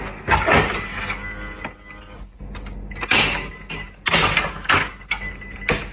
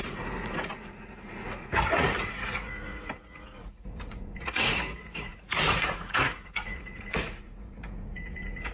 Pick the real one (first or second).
first